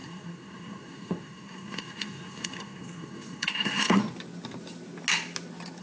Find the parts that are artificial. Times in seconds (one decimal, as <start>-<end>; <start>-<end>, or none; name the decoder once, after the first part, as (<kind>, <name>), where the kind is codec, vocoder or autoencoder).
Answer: 0.0-4.0 (codec, SNAC)